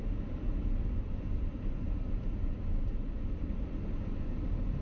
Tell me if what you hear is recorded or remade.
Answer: recorded